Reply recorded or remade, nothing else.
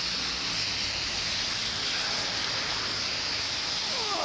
recorded